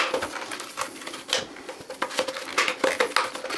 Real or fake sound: real